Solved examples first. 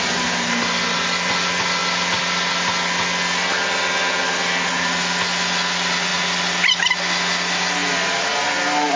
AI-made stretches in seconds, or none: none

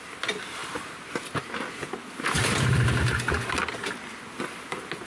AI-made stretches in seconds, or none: none

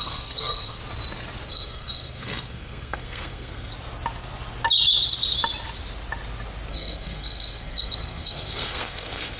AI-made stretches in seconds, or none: 0.0-0.8 (codec, SNAC); 1.5-3.7; 6.7-9.4

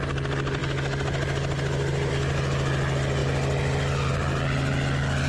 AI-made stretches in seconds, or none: none

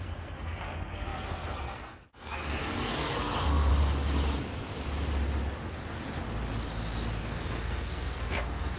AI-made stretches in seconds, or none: 0.0-3.7 (codec, SNAC); 7.2-8.8

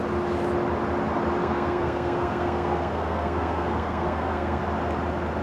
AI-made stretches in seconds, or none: 1.4-4.6 (codec, SNAC)